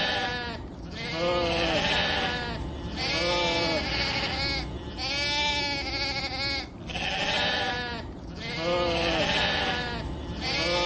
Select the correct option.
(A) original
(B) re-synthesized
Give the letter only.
A